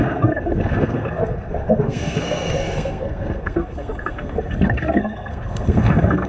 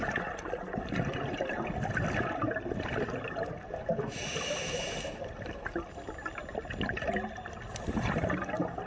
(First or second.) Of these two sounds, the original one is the second